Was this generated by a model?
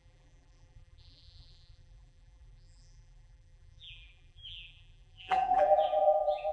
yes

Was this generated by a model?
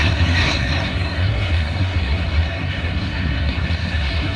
yes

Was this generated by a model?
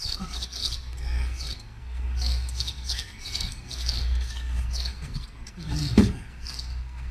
yes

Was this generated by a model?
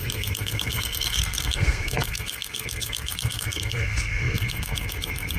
yes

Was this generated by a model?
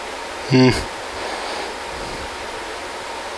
no